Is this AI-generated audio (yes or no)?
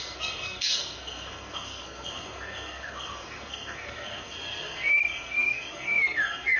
yes